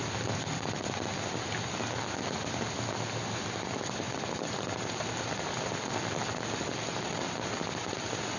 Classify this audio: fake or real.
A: real